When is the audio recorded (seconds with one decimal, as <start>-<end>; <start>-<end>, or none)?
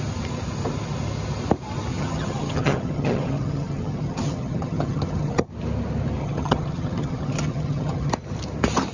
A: 0.0-1.9; 5.5-6.2; 8.1-8.9